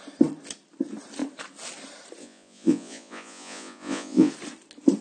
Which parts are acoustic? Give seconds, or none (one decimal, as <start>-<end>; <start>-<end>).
0.0-2.2; 4.3-5.0